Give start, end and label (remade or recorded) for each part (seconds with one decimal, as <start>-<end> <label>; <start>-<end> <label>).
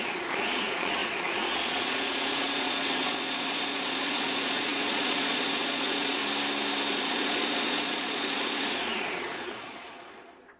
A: 0.0-6.2 remade; 6.2-6.9 recorded; 6.9-10.6 remade